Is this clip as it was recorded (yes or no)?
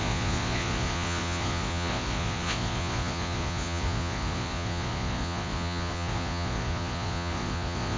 no